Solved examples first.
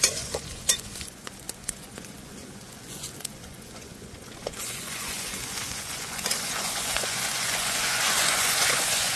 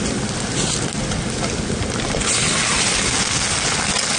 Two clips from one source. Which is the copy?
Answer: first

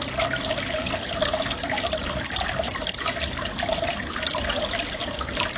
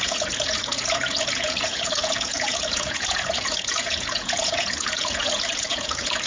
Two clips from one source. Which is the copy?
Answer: second